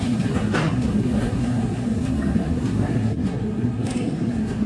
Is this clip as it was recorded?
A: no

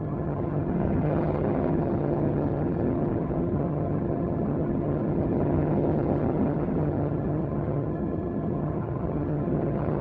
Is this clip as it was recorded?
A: no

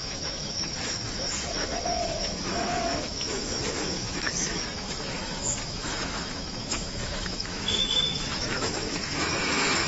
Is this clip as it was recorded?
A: no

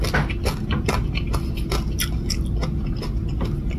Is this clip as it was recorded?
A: yes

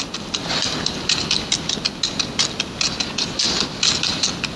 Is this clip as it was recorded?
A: yes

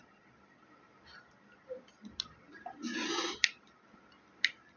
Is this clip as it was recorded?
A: yes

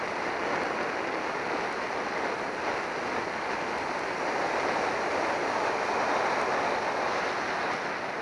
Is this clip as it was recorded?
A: yes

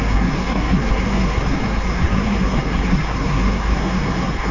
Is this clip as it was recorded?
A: no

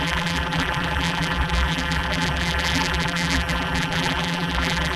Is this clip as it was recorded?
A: no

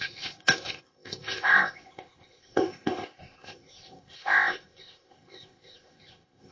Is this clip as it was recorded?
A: no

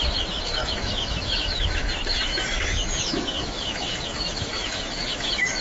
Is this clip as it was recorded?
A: no